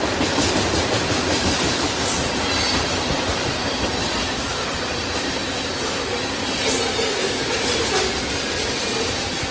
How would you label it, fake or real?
real